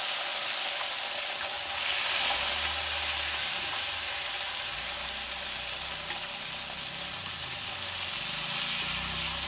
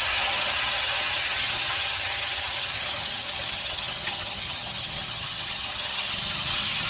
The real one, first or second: first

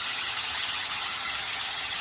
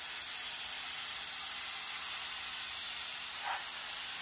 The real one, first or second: second